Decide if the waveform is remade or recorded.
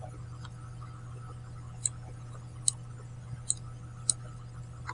recorded